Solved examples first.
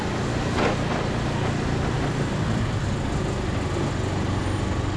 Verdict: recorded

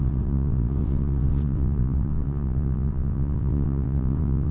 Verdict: remade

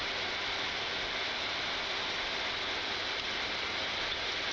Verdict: recorded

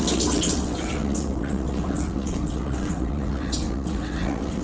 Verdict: remade